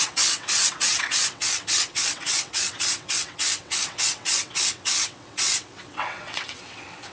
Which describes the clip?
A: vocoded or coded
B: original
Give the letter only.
A